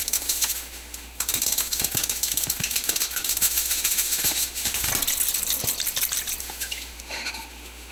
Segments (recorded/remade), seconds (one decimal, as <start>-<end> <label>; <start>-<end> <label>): 0.0-4.9 remade; 4.9-6.4 recorded; 6.4-7.9 remade